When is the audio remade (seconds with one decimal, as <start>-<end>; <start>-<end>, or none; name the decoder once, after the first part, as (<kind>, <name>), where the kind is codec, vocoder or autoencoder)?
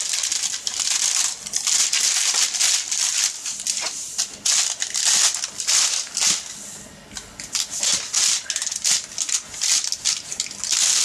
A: none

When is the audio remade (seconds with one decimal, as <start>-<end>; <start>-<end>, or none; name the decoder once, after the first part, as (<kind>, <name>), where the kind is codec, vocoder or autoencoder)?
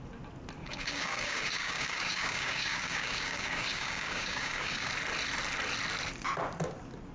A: 0.6-4.9 (codec, DAC)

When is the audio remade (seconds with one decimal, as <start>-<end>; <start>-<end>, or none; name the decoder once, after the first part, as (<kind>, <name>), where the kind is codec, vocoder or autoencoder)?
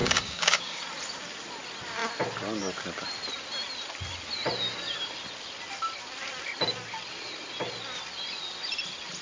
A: 0.0-0.8 (codec, DAC)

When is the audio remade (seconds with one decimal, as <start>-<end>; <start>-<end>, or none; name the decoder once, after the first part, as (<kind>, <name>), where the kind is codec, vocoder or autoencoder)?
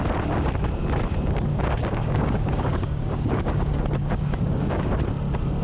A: 1.5-4.9 (codec, DAC)